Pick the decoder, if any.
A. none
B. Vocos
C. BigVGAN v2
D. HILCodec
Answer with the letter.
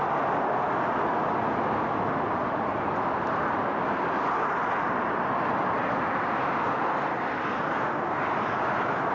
A